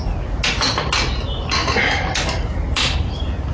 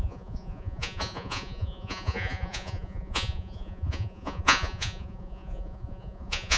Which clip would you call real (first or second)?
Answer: first